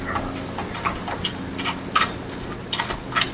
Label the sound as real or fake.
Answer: real